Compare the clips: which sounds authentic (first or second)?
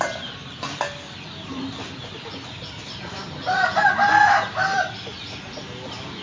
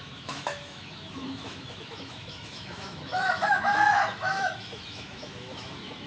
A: first